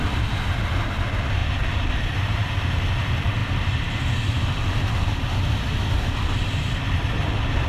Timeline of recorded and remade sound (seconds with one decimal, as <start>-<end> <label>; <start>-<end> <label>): 0.0-7.7 recorded

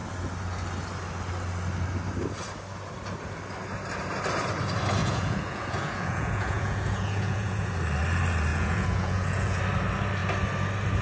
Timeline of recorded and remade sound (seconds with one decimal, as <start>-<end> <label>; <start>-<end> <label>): 0.0-5.0 recorded; 5.0-7.7 remade; 7.7-8.5 recorded; 8.5-9.6 remade; 9.6-11.0 recorded

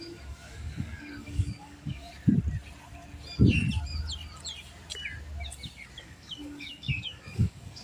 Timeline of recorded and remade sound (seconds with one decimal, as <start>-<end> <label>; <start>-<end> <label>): 0.0-2.1 remade; 2.1-6.0 recorded; 6.0-7.8 remade

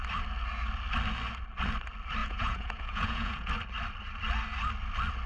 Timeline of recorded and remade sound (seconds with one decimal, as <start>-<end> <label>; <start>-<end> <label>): 0.0-2.2 recorded; 2.2-3.5 remade; 3.5-5.3 recorded

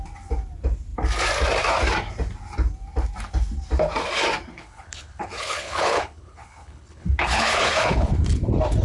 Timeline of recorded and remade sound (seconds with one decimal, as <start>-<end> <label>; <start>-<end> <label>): 0.0-4.5 recorded; 4.5-8.1 remade; 8.1-8.8 recorded

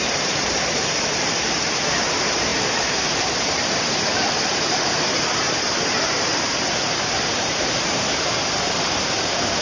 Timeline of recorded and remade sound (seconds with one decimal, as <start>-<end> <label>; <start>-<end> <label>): 0.0-9.6 remade

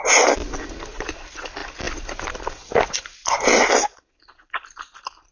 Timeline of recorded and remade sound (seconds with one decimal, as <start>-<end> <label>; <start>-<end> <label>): 0.0-5.3 recorded